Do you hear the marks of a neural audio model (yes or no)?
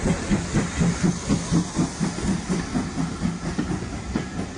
no